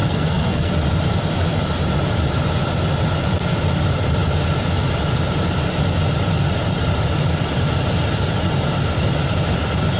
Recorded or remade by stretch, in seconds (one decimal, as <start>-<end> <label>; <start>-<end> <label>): 0.0-0.7 remade; 0.7-10.0 recorded